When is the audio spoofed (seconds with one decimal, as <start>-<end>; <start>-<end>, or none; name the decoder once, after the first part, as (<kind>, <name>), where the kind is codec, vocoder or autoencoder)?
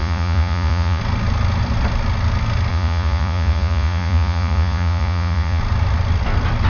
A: 0.0-1.0 (vocoder, Vocos); 2.7-5.6